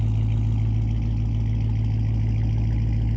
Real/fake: real